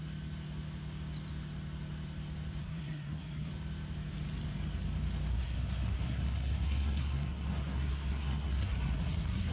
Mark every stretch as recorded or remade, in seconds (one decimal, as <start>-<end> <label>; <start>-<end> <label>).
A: 0.0-2.6 recorded; 2.6-3.5 remade; 3.5-5.3 recorded; 5.3-9.5 remade